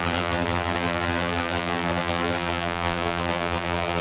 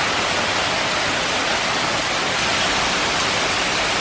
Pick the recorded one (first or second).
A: second